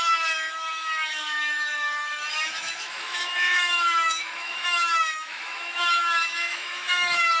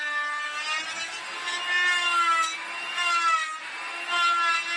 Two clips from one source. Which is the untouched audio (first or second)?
second